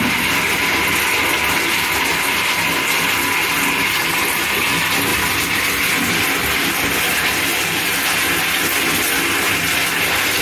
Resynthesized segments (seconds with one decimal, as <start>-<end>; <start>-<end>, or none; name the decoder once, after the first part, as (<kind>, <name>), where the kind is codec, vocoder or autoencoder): 7.5-8.0 (vocoder, BigVGAN v2)